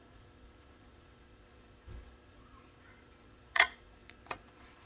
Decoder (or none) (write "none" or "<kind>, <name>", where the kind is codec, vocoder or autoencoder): vocoder, Vocos